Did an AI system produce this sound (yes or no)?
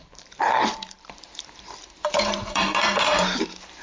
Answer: yes